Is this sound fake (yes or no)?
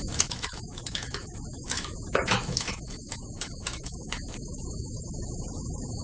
yes